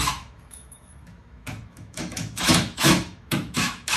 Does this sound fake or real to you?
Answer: fake